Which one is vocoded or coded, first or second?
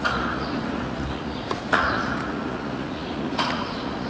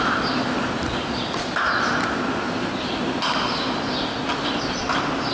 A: first